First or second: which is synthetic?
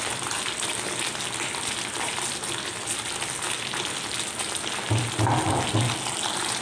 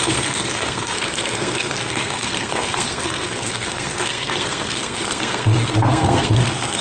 second